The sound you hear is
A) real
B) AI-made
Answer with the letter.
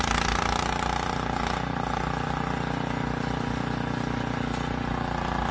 A